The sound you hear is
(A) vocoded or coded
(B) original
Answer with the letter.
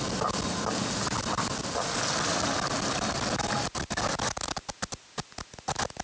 B